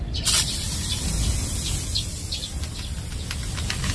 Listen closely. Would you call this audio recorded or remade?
recorded